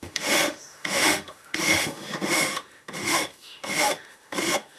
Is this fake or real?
fake